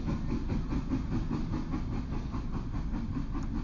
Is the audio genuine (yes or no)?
yes